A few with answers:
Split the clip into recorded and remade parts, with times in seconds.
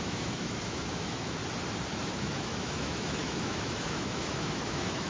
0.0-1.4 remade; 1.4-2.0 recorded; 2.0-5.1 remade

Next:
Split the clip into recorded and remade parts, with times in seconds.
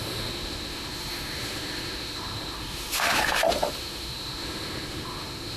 0.0-5.6 remade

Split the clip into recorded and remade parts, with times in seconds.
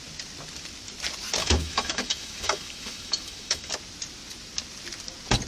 0.0-1.4 recorded; 1.4-3.7 remade; 3.7-5.5 recorded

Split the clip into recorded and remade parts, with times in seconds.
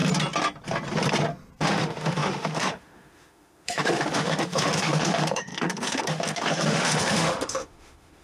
0.0-1.6 recorded; 1.6-8.2 remade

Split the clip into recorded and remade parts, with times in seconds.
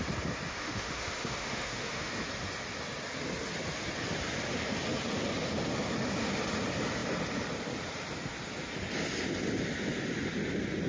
0.0-0.5 recorded; 0.5-2.1 remade; 2.1-10.9 recorded